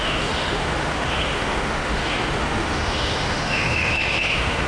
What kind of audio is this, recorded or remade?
remade